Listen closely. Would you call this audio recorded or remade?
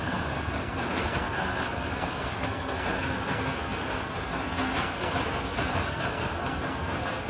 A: remade